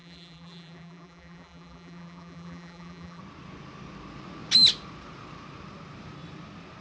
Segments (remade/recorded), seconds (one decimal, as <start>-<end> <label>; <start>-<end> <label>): 0.0-3.2 remade; 3.2-6.8 recorded